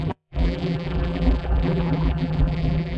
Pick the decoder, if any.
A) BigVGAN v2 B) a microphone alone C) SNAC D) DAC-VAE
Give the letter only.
A